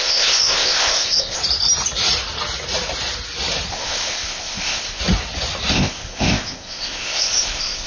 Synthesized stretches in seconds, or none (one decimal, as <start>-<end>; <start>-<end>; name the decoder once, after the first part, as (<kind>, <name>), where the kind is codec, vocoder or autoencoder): 0.0-1.4 (codec, ZipCodec); 3.7-5.0; 5.7-7.9